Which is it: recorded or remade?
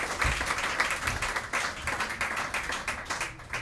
recorded